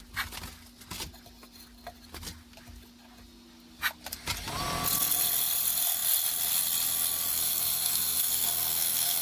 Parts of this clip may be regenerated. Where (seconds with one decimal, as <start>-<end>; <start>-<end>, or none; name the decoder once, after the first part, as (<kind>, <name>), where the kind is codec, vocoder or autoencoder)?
7.3-9.2 (codec, SNAC)